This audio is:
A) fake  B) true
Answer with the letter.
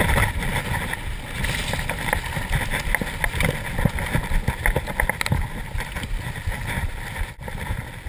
B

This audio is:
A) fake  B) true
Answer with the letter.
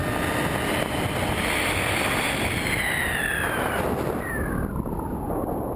B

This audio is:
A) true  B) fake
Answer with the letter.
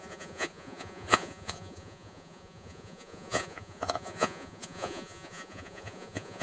B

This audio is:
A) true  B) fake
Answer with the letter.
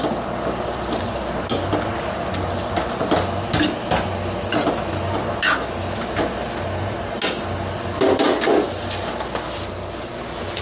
A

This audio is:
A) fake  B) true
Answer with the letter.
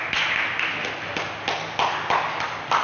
B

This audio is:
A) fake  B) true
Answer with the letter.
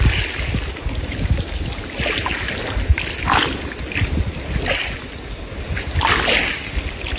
B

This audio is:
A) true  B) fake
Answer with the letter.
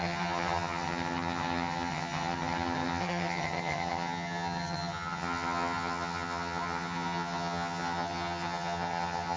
B